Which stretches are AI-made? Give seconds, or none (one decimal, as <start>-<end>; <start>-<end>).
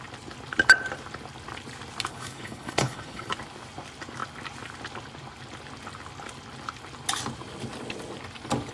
2.1-3.3